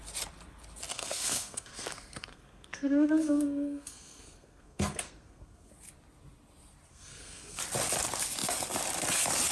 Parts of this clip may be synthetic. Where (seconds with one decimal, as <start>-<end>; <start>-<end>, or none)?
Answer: 0.9-5.7; 6.9-7.6

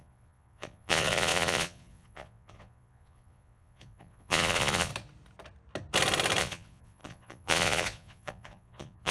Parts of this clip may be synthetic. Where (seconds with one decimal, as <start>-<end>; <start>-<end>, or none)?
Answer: 0.0-4.9; 6.4-9.1

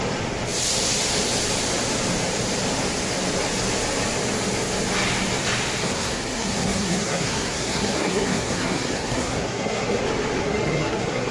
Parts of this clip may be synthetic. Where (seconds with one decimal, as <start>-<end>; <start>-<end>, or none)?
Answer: 5.8-10.0; 10.4-11.3

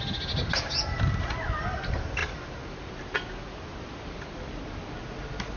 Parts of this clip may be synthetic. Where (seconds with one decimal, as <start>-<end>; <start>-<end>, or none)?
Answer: none

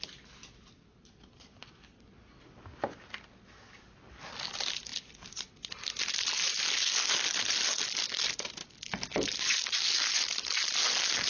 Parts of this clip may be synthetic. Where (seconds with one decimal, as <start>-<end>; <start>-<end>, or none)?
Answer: none

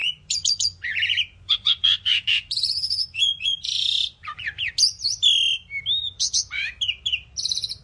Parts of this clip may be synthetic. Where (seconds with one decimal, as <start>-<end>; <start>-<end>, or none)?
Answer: 0.0-4.7; 6.0-6.6

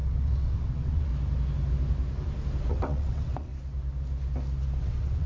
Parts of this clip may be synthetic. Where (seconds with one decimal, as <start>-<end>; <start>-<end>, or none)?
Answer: 0.0-1.1; 2.7-3.5; 4.8-5.3

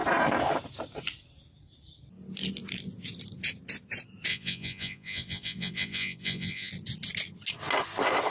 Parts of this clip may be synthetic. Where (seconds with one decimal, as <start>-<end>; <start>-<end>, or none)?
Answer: 4.3-6.7